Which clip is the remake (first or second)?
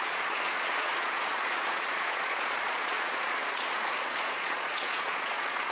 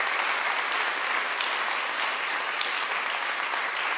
first